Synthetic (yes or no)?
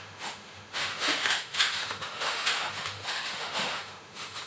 yes